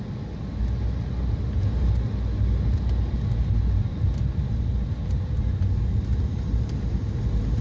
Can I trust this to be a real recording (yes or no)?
yes